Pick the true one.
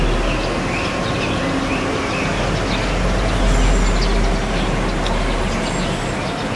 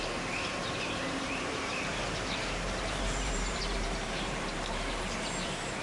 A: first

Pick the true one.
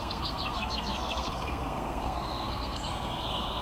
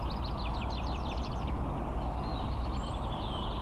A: second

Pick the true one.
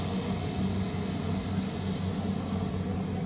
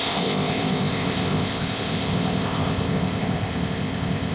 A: first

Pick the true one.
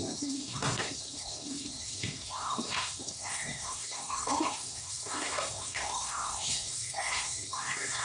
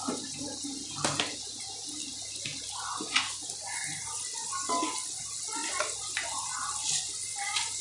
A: second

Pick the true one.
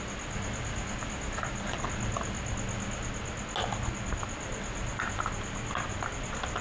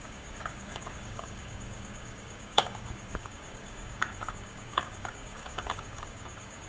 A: first